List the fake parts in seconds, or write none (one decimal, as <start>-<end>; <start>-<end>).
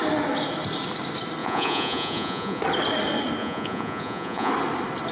1.4-2.6; 3.4-4.5